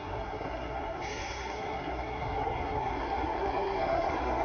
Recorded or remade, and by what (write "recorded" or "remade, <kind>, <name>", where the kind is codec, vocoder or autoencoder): remade, codec, SNAC